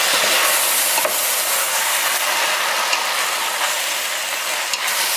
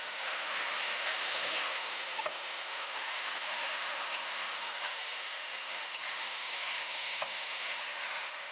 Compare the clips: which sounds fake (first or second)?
second